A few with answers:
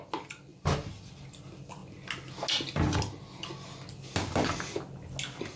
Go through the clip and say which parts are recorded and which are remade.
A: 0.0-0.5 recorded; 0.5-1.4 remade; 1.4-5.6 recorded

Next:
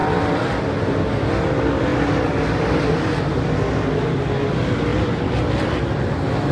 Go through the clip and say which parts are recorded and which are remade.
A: 0.0-0.5 remade; 0.5-4.9 recorded; 4.9-6.1 remade; 6.1-6.5 recorded

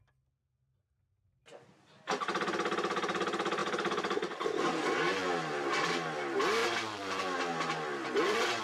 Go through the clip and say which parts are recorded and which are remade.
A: 0.0-3.6 recorded; 3.6-4.8 remade; 4.8-5.2 recorded; 5.2-5.9 remade; 5.9-6.6 recorded; 6.6-8.6 remade

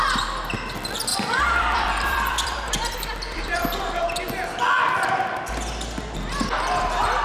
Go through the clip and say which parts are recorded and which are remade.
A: 0.0-1.1 recorded; 1.1-4.6 remade; 4.6-7.2 recorded

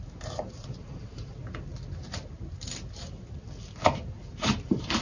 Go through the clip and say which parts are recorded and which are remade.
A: 0.0-1.7 remade; 1.7-3.9 recorded; 3.9-5.0 remade

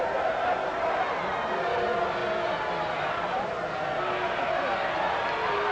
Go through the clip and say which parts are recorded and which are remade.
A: 0.0-5.7 recorded

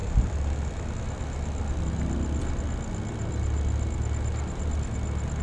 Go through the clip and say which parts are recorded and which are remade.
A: 0.0-0.9 remade; 0.9-5.4 recorded